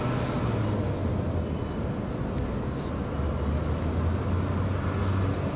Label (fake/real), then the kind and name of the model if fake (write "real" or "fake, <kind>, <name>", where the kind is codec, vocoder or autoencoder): real